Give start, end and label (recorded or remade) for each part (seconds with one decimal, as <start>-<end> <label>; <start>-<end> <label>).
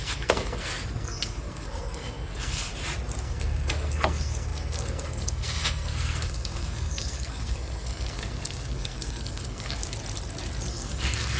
0.0-2.7 remade; 2.7-3.2 recorded; 3.2-9.8 remade; 9.8-10.7 recorded; 10.7-11.4 remade